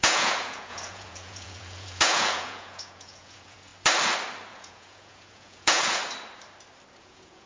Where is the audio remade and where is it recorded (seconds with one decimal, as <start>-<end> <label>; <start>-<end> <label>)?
0.0-3.7 remade; 3.7-4.5 recorded; 4.5-6.0 remade; 6.0-7.0 recorded; 7.0-7.5 remade